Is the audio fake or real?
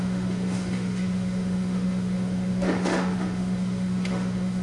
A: fake